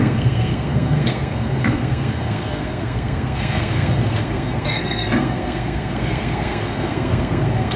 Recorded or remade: remade